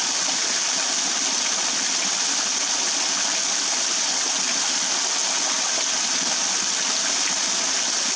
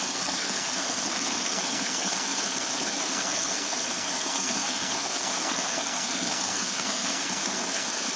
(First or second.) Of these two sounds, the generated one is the second